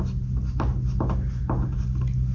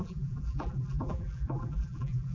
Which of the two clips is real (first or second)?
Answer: first